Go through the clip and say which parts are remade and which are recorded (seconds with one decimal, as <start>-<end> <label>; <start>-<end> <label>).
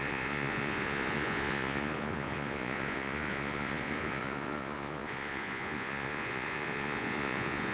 0.0-7.7 remade